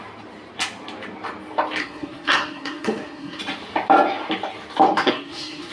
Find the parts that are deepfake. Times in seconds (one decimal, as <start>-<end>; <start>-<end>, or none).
1.8-3.4; 5.0-5.7